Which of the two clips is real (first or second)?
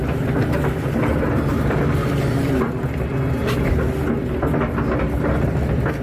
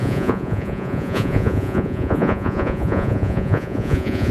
first